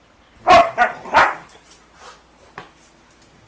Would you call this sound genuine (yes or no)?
yes